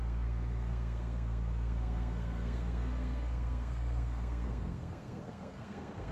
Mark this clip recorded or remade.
remade